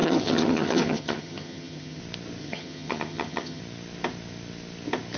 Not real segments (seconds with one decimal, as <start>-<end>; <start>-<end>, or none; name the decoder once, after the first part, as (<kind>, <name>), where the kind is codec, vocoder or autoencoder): 0.0-2.0 (vocoder, HiFi-GAN); 2.4-3.6